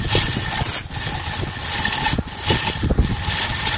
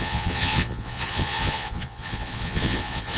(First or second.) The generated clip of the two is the second